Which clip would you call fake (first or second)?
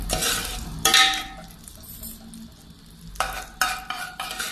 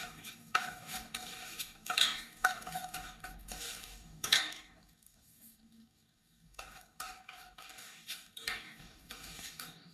second